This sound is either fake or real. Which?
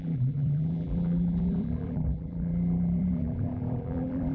fake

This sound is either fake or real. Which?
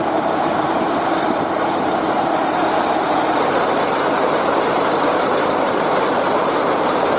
fake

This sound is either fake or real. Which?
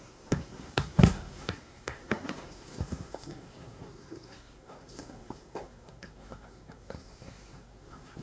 fake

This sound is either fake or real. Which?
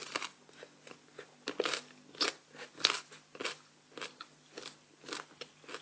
real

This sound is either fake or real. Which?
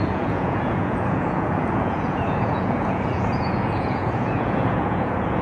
fake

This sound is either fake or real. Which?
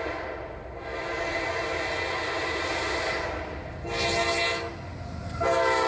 real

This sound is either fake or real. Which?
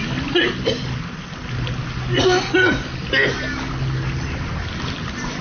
real